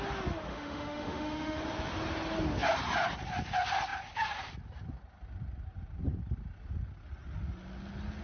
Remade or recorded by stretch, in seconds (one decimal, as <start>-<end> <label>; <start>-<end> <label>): 0.0-0.5 recorded; 0.5-1.6 remade; 1.6-8.2 recorded